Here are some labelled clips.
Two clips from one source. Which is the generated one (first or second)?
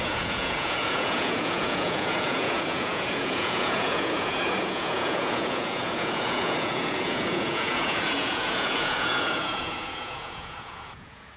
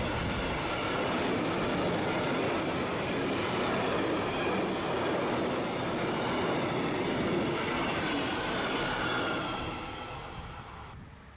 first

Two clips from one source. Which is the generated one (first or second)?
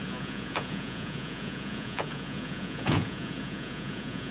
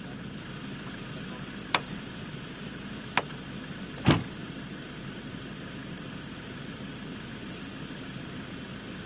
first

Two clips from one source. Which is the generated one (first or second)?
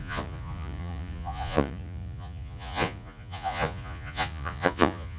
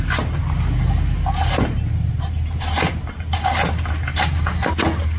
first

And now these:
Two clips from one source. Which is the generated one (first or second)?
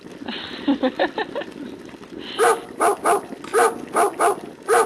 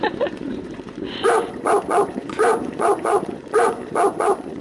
second